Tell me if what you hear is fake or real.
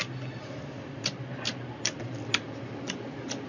real